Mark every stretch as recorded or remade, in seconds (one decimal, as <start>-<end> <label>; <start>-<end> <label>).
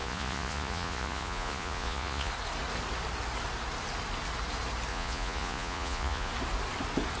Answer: 0.0-2.3 remade; 2.3-4.9 recorded; 4.9-6.3 remade; 6.3-7.2 recorded